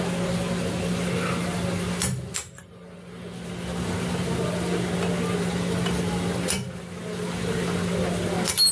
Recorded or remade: recorded